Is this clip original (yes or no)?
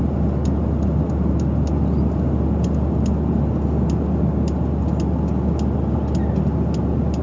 yes